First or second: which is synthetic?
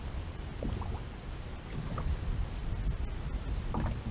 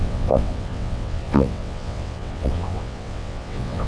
second